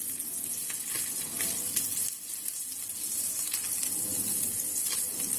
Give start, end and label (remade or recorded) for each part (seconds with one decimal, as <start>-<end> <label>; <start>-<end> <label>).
0.0-5.4 recorded